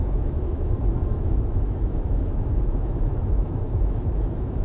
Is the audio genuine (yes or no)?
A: no